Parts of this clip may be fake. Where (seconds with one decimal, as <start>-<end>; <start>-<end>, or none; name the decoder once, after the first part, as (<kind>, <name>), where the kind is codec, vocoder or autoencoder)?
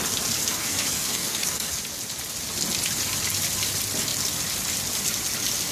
0.4-1.8 (codec, SNAC)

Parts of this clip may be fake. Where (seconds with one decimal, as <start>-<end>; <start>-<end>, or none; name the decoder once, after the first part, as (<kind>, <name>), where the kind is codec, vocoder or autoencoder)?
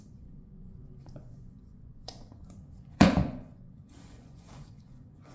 0.0-5.3 (vocoder, Vocos)